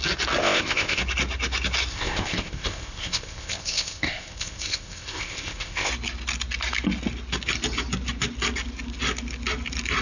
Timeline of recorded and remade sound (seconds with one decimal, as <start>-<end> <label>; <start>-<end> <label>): 0.0-0.4 recorded; 0.4-1.0 remade; 1.0-1.9 recorded; 1.9-5.9 remade; 5.9-10.0 recorded